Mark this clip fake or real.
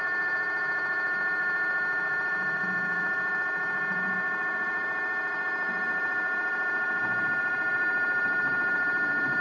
fake